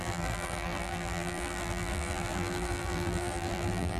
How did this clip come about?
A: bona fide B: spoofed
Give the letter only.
B